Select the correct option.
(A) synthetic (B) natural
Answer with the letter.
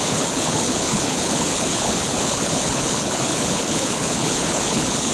A